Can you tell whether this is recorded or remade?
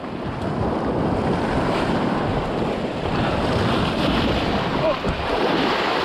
recorded